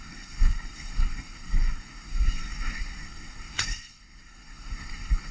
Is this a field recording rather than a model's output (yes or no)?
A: no